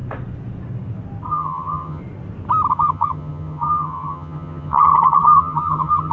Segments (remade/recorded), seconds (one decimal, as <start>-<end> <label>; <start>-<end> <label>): 0.0-1.3 recorded; 1.3-2.0 remade; 2.0-2.7 recorded; 2.7-6.1 remade